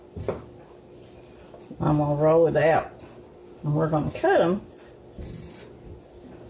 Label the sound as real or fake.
real